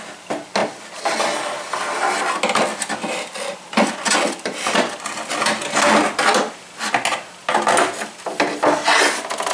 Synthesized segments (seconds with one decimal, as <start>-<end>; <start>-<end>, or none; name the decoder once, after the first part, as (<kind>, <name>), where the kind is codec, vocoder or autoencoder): 2.7-5.4 (vocoder, BigVGAN v2)